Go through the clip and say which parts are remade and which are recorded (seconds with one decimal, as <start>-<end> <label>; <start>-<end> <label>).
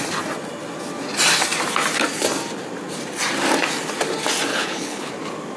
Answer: 0.0-4.5 recorded; 4.5-5.1 remade; 5.1-5.6 recorded